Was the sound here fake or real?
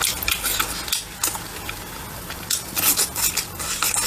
real